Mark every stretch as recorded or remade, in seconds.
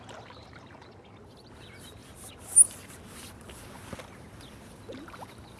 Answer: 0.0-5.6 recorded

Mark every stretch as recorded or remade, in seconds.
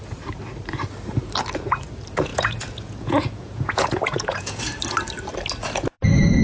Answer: 0.0-2.3 recorded; 2.3-4.6 remade; 4.6-6.4 recorded